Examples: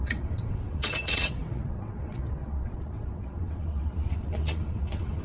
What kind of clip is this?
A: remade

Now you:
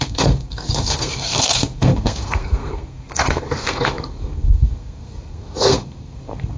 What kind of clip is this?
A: remade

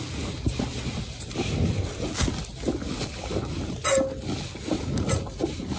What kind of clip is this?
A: recorded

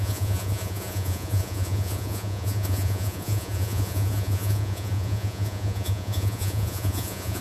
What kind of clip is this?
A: remade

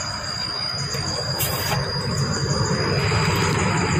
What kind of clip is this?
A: recorded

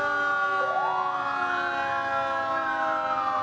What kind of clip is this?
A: recorded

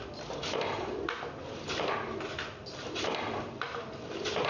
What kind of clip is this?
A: recorded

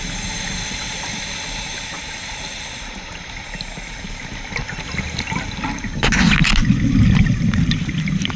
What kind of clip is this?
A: recorded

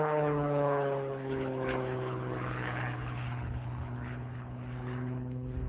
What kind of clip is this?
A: remade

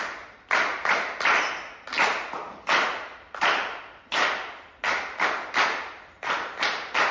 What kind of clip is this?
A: recorded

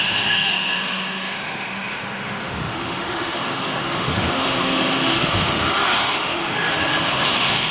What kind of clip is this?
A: remade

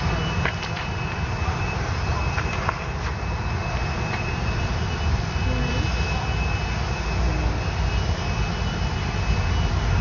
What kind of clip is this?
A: recorded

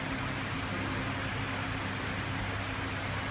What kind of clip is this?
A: recorded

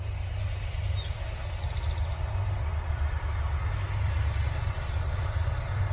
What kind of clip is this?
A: recorded